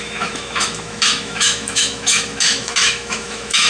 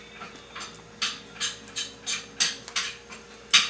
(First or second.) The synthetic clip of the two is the first